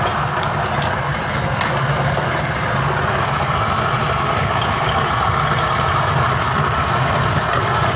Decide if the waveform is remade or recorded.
recorded